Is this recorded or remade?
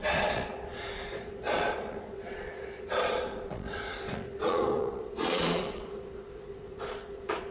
remade